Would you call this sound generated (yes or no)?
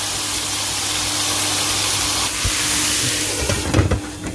no